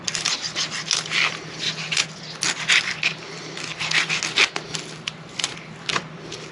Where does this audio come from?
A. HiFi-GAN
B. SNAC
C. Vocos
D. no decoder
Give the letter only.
D